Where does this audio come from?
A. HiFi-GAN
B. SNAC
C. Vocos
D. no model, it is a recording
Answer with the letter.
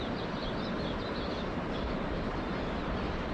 D